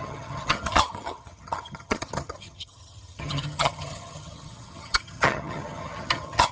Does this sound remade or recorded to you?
remade